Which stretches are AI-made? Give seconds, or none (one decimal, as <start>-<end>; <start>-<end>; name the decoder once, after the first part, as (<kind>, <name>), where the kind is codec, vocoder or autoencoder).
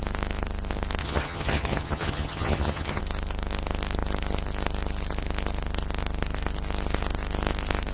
1.0-3.0 (vocoder, HiFi-GAN)